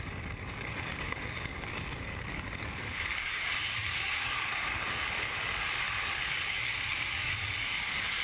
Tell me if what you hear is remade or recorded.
remade